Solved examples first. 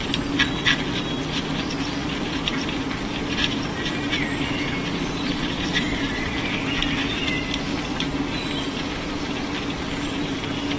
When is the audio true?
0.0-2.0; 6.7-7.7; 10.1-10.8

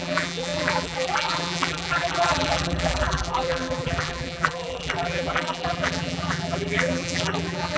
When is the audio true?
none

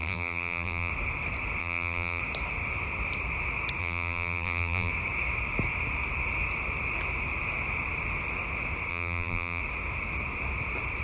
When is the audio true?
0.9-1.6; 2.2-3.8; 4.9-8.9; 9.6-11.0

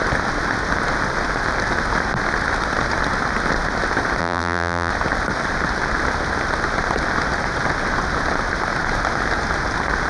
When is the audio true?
0.0-4.2; 4.9-10.1

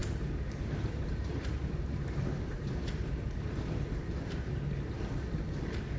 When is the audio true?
0.6-1.6; 4.7-6.0